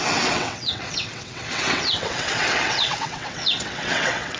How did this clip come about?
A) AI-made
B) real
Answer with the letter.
A